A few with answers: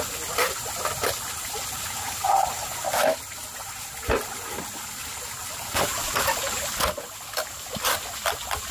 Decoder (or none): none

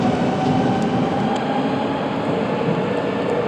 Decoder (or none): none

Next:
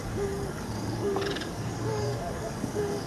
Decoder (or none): codec, DAC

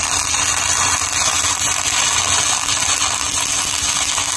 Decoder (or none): none